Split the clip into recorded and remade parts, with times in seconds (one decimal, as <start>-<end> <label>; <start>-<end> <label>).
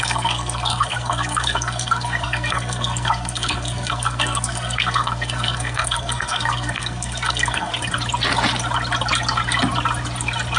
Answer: 0.0-7.7 remade; 7.7-10.6 recorded